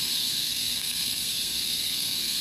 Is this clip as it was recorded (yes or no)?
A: no